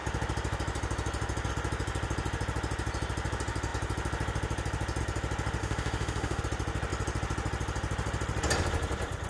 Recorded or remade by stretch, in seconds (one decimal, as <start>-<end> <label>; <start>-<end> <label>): 0.0-5.6 recorded; 5.6-6.4 remade; 6.4-9.3 recorded